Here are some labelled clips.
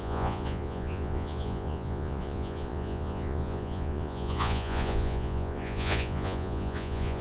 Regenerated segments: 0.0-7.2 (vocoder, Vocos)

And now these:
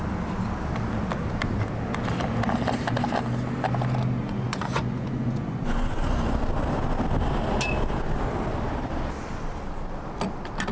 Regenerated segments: 4.2-6.4 (vocoder, Vocos)

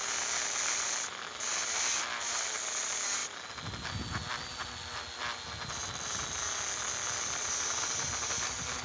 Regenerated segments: none

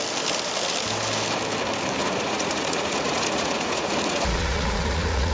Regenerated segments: 2.0-5.3 (vocoder, Vocos)

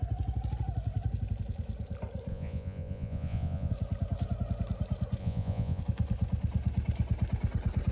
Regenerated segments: 2.3-3.7 (vocoder, Vocos); 5.2-5.8

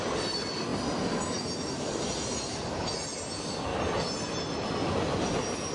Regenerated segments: none

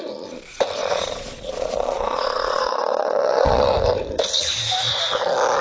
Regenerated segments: 0.8-3.7 (vocoder, Vocos)

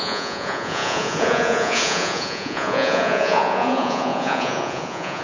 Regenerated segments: 0.0-5.2 (vocoder, Vocos)